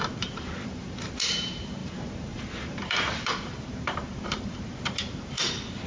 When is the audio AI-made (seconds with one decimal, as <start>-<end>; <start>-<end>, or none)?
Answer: 0.0-5.9

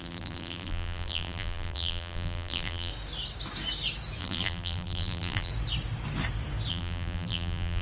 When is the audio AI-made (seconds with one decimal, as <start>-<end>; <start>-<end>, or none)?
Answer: 0.0-2.9; 4.2-5.5; 6.7-7.8

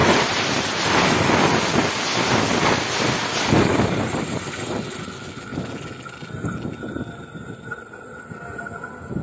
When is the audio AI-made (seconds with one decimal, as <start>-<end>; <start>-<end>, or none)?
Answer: 0.0-1.3

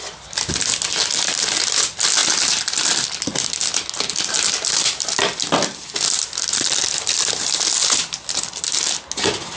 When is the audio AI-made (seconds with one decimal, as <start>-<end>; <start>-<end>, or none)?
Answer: 2.2-3.3

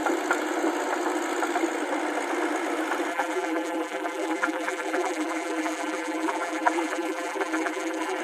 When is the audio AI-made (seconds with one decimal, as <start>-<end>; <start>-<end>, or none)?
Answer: 3.1-8.2

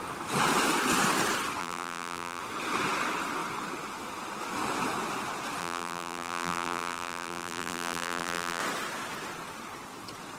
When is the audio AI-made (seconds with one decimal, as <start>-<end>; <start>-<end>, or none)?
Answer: 1.6-2.4; 5.6-8.6